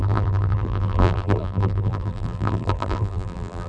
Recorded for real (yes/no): no